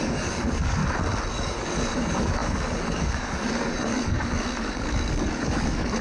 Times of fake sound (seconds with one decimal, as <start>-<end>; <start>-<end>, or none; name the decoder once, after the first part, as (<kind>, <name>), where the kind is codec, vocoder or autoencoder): 0.0-0.8 (codec, DAC); 1.3-6.0